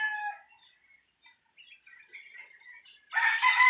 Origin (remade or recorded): recorded